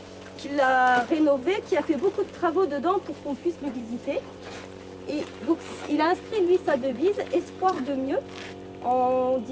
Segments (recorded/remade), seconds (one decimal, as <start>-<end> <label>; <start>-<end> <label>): 0.0-1.4 recorded; 1.4-2.0 remade; 2.0-3.4 recorded; 3.4-8.1 remade; 8.1-9.5 recorded